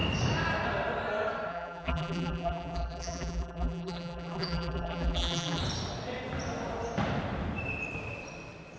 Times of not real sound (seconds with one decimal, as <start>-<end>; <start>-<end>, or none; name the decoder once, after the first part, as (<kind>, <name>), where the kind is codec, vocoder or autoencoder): 1.5-5.6 (vocoder, BigVGAN v2)